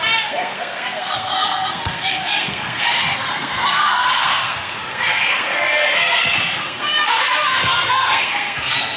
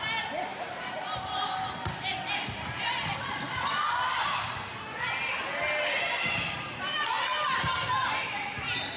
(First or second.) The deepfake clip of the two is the first